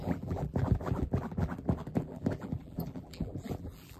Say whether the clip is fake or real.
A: fake